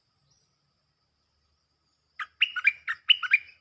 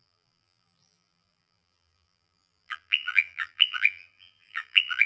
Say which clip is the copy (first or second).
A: second